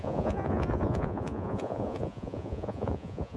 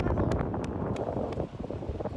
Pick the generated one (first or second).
first